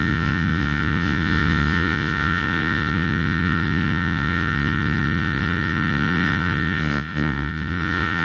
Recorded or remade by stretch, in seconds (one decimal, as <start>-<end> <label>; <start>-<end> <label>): 0.0-8.2 remade